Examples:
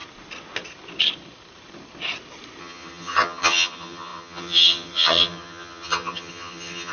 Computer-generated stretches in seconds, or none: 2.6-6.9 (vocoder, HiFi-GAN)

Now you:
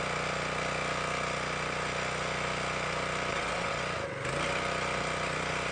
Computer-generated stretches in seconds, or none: 3.3-3.8 (vocoder, WaveNeXt)

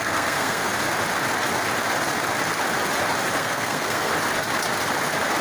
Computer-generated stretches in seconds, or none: 0.0-0.7 (codec, SNAC); 3.4-4.1